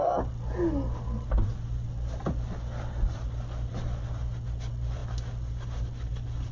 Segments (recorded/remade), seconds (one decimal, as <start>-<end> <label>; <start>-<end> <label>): 0.0-6.5 recorded